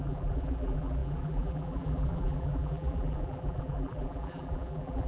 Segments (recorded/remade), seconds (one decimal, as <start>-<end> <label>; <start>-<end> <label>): 0.0-5.1 remade